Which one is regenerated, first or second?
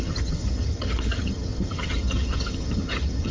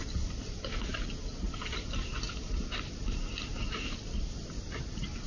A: first